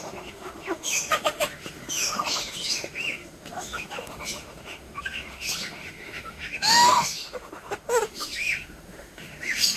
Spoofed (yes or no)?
yes